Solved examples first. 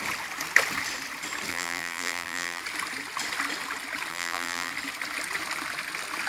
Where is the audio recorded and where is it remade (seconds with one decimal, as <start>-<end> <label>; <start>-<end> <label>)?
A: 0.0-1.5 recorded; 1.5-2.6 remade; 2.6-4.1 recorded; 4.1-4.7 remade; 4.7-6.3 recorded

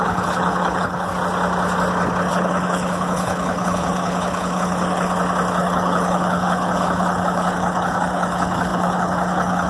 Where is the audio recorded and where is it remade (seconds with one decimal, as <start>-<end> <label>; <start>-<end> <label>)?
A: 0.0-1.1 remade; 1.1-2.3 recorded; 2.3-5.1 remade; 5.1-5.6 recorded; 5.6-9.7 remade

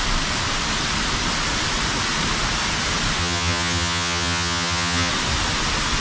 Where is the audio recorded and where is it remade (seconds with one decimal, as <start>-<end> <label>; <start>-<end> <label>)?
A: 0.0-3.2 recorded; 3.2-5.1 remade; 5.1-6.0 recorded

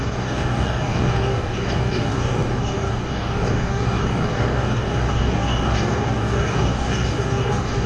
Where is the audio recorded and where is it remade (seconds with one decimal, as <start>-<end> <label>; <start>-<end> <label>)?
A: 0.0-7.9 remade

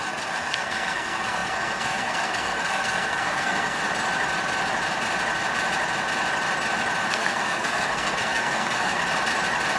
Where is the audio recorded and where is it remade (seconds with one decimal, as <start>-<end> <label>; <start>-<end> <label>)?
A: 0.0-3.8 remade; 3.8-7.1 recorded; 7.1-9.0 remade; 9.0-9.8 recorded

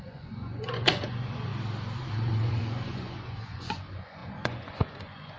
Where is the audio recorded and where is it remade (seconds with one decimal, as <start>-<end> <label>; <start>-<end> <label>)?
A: 0.0-1.5 remade; 1.5-2.1 recorded; 2.1-5.4 remade

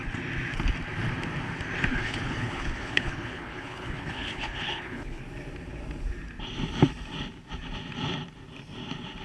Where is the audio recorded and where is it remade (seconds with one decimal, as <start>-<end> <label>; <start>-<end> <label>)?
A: 0.0-1.9 recorded; 1.9-5.2 remade; 5.2-9.2 recorded

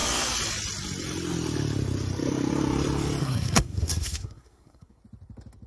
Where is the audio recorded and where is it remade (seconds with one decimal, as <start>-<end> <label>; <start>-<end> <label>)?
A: 0.0-3.2 recorded; 3.2-5.0 remade; 5.0-5.7 recorded